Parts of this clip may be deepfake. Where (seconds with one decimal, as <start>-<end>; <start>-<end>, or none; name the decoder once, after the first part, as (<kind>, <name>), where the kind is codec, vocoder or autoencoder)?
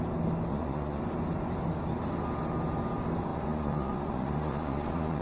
0.5-1.0 (vocoder, Vocos); 3.3-5.2